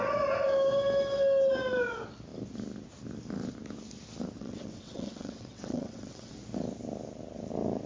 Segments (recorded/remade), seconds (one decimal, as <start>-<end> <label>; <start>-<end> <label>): 0.0-4.4 recorded; 4.4-6.3 remade; 6.3-7.9 recorded

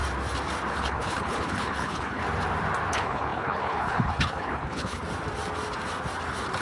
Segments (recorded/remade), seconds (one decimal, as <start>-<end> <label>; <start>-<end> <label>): 0.0-0.7 recorded; 0.7-2.2 remade; 2.2-2.9 recorded; 2.9-5.0 remade; 5.0-6.6 recorded